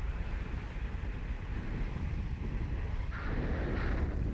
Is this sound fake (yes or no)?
no